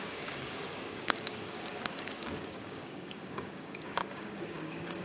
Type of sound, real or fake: fake